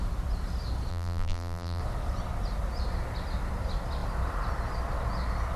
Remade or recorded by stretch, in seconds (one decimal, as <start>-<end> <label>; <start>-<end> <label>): 0.0-0.9 recorded; 0.9-1.8 remade; 1.8-5.6 recorded